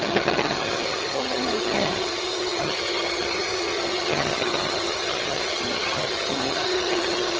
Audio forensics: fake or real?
fake